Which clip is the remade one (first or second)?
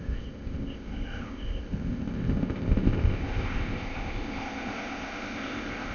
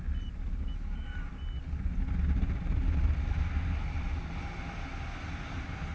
first